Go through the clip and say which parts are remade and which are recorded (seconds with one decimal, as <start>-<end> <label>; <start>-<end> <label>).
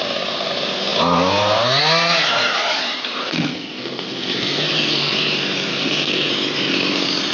0.0-3.2 recorded; 3.2-5.1 remade; 5.1-5.7 recorded; 5.7-6.3 remade; 6.3-7.3 recorded